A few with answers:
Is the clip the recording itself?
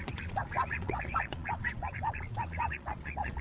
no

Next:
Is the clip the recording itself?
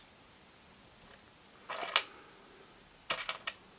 yes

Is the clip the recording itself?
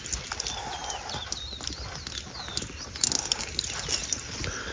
yes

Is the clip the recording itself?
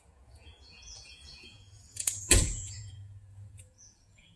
no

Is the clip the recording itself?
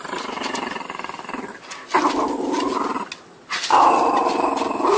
yes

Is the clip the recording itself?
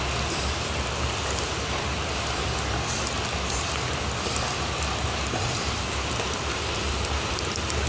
yes